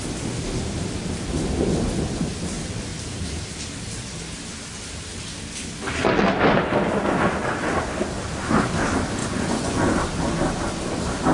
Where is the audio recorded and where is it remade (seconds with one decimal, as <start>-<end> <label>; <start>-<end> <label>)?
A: 0.0-9.2 recorded; 9.2-9.9 remade; 9.9-11.3 recorded